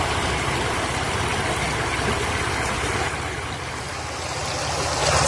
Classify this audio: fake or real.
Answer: real